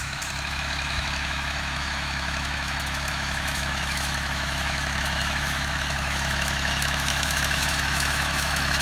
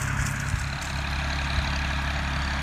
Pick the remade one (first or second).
first